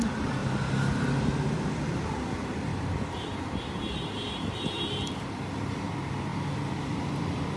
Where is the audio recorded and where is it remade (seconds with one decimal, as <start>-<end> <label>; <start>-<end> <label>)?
0.0-0.4 remade; 0.4-1.8 recorded; 1.8-7.6 remade